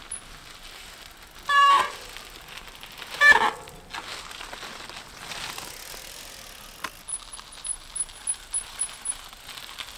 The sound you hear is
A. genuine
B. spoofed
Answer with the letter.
A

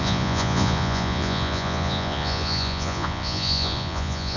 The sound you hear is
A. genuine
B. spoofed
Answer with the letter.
B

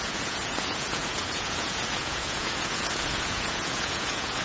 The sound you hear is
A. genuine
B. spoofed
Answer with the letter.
B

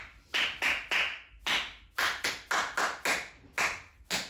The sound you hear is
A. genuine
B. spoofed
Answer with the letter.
A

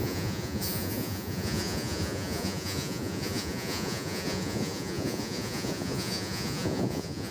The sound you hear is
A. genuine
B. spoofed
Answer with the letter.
B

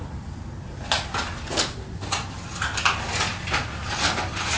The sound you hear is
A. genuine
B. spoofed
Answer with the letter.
A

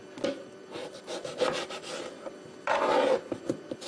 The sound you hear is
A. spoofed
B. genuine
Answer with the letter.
B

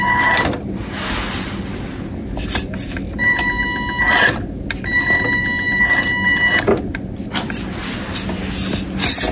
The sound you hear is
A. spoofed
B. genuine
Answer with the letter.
B